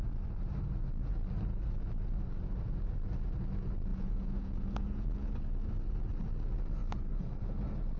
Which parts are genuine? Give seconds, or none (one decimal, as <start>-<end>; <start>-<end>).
0.0-3.9; 5.3-8.0